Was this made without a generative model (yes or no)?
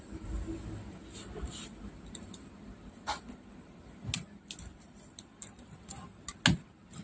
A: yes